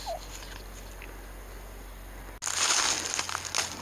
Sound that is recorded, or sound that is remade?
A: recorded